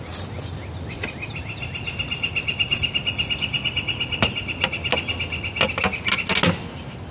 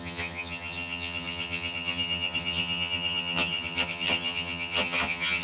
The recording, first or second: first